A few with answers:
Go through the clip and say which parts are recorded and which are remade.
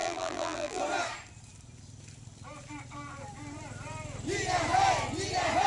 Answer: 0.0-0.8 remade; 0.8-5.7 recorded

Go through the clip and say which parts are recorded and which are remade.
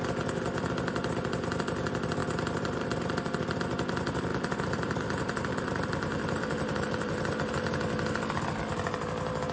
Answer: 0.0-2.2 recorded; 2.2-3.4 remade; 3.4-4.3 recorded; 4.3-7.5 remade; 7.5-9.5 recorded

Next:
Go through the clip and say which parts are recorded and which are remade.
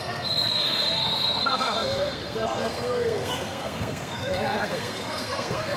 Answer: 0.0-5.8 remade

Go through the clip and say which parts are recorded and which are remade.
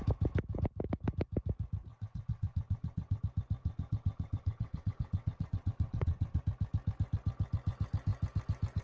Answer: 0.0-1.9 recorded; 1.9-3.2 remade; 3.2-3.6 recorded; 3.6-6.4 remade; 6.4-8.8 recorded